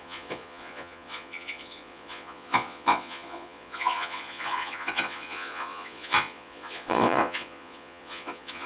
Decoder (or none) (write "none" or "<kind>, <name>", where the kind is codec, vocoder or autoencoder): vocoder, Vocos